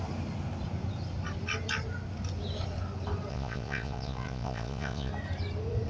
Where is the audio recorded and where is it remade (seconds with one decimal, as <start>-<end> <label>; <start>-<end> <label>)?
0.0-3.3 recorded; 3.3-5.1 remade; 5.1-5.9 recorded